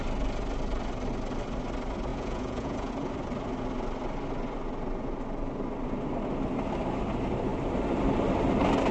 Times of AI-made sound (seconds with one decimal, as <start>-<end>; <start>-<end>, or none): 2.1-2.9